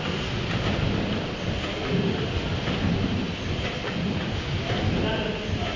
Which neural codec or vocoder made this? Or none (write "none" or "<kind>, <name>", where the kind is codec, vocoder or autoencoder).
none